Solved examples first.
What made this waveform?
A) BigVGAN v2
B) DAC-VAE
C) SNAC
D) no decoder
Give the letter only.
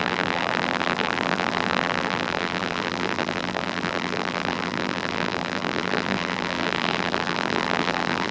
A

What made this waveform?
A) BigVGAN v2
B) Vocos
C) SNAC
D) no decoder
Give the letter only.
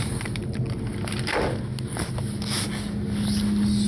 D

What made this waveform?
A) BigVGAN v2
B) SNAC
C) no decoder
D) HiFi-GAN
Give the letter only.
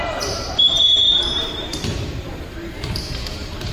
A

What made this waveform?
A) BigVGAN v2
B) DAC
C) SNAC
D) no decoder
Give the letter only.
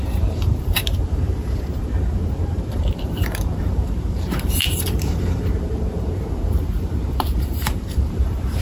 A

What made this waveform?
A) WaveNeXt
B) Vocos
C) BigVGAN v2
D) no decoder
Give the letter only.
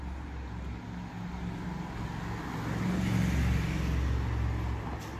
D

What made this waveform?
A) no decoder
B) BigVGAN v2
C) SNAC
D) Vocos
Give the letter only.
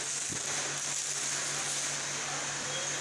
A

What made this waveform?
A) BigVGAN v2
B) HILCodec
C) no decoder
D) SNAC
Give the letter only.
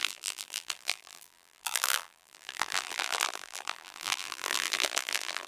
A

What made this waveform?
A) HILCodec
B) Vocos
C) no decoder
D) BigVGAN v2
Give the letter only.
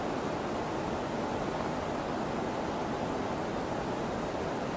C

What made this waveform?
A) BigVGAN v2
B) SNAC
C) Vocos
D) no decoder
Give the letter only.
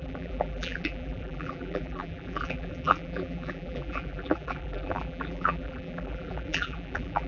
A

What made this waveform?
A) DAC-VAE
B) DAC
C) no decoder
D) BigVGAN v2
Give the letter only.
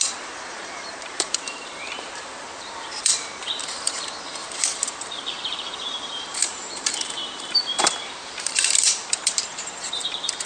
D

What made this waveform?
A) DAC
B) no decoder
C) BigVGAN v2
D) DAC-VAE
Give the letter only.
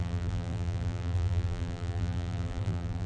C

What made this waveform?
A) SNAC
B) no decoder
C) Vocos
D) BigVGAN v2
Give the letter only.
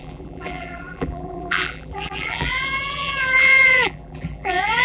D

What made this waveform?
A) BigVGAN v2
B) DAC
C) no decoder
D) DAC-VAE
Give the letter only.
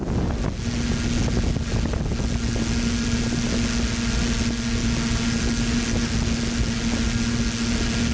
C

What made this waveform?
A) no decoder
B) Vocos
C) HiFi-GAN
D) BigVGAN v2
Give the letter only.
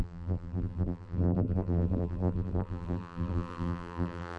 D